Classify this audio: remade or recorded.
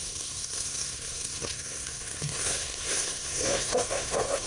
remade